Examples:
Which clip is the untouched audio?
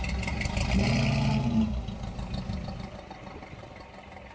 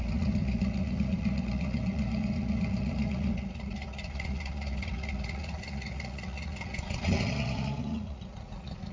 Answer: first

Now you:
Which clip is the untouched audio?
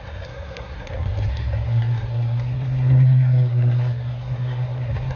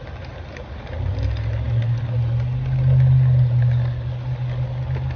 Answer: second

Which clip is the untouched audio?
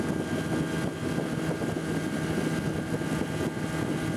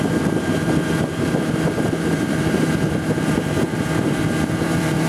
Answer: first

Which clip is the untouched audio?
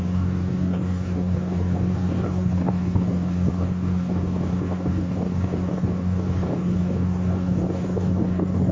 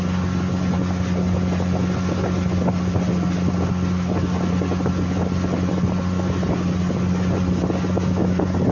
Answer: second